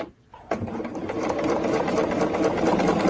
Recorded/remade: recorded